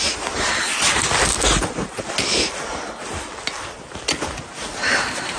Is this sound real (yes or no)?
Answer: yes